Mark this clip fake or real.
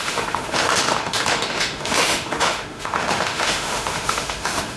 fake